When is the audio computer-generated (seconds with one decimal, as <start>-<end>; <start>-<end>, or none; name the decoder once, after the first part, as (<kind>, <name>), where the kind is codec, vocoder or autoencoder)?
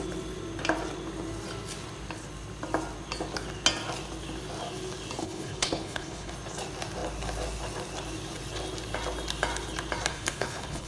5.2-6.3 (codec, HILCodec); 10.1-10.9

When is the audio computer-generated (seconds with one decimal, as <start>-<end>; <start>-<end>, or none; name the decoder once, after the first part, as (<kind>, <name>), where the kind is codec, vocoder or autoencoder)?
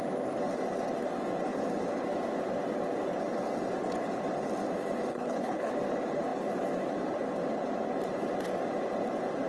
5.1-5.7 (codec, HILCodec)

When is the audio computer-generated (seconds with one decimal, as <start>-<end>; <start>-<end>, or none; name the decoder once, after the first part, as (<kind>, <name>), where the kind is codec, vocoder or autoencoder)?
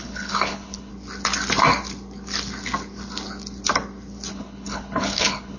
0.0-0.9 (codec, HILCodec); 4.3-5.6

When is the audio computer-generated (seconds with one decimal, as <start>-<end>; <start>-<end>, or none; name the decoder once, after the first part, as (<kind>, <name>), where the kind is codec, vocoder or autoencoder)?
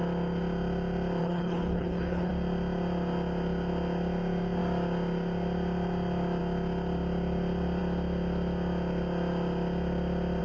1.2-2.3 (codec, HILCodec)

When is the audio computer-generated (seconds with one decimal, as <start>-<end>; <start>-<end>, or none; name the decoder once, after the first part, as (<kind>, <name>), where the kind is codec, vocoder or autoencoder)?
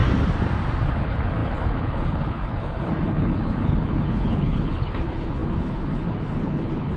0.9-7.0 (codec, HILCodec)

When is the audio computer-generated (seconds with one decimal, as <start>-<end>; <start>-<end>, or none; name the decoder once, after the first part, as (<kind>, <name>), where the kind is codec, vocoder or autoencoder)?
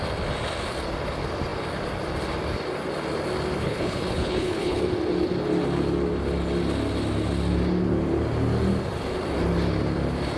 3.6-4.8 (codec, HILCodec)